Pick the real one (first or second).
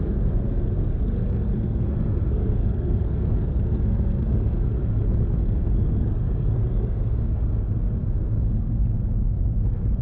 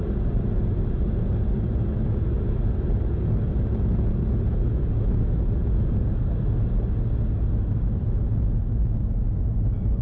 second